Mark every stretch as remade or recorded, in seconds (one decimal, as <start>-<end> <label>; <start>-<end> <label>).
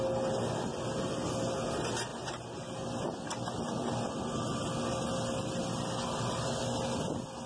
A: 0.0-7.5 recorded